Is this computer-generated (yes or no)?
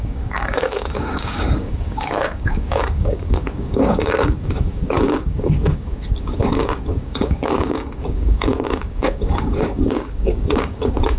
yes